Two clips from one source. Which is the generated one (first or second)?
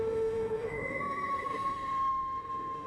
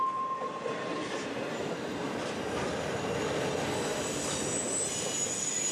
first